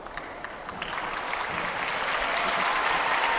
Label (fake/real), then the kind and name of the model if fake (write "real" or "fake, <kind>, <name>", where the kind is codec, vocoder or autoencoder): real